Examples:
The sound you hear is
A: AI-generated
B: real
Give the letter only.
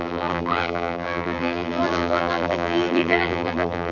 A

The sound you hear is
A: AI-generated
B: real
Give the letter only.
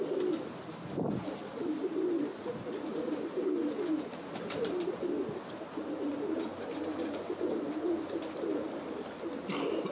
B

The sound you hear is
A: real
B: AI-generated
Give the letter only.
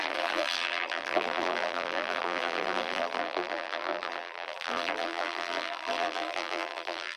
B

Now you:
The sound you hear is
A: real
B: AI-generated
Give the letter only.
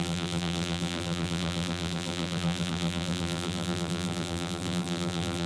B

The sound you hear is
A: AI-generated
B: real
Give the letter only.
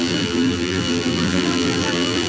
A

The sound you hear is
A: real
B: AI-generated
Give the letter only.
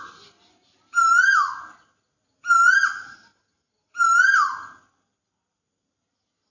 A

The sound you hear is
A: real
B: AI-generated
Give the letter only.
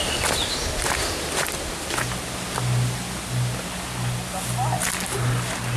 A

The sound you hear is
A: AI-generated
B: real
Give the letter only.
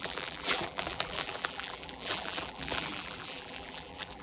A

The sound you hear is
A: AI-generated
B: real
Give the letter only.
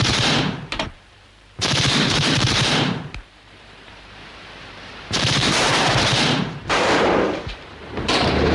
A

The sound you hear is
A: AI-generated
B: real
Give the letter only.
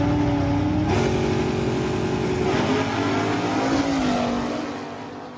B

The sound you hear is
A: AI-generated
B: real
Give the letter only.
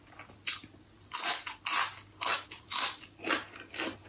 B